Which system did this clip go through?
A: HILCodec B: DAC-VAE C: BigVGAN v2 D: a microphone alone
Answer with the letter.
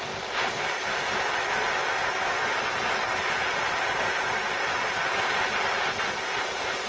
D